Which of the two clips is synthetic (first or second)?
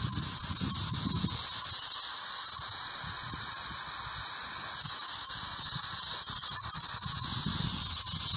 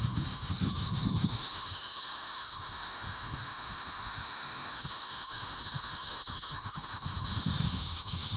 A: second